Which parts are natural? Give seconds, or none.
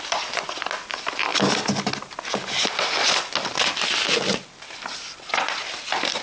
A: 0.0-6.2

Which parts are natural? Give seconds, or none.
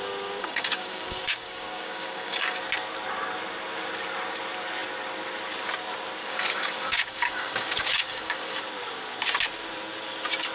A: 0.0-0.4; 2.6-6.2; 8.6-10.5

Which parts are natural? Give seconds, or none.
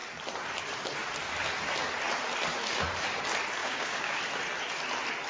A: 0.0-3.6; 4.2-5.3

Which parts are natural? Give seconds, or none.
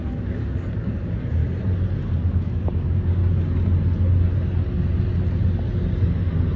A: 1.4-2.3; 3.2-6.6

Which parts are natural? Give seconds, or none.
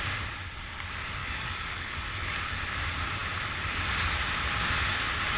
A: 0.0-1.2; 2.6-5.4